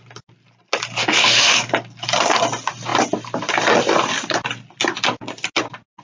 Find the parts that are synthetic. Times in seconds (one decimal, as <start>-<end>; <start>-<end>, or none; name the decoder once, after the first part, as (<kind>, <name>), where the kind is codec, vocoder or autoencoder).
1.0-1.7 (autoencoder, DAC-VAE)